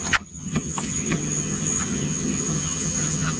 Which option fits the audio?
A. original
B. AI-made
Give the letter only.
B